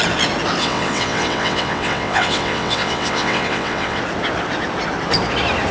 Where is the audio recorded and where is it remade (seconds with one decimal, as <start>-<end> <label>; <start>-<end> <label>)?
0.0-0.6 recorded; 0.6-4.0 remade; 4.0-5.7 recorded